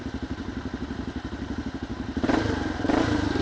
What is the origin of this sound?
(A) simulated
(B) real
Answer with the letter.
B